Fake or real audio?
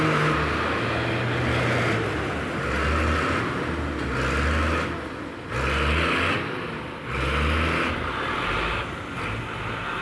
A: real